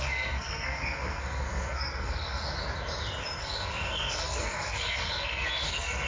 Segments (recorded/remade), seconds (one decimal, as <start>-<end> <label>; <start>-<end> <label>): 0.0-2.4 remade; 2.4-3.4 recorded; 3.4-6.1 remade